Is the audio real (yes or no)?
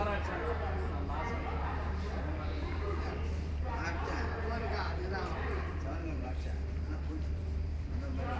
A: no